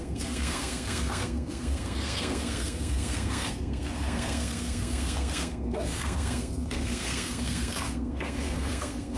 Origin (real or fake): fake